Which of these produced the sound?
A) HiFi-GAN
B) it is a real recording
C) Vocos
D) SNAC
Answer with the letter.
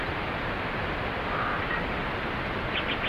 B